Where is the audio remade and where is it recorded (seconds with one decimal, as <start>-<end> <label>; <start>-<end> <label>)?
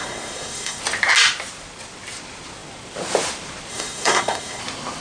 0.0-0.8 remade; 0.8-3.7 recorded; 3.7-4.6 remade; 4.6-5.0 recorded